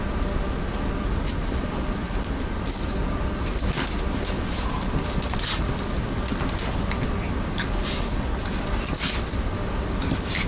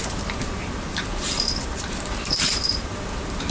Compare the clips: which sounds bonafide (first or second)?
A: first